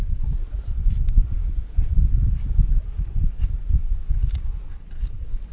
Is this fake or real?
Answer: real